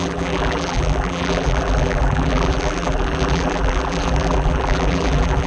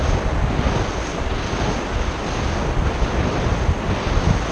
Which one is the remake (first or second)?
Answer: first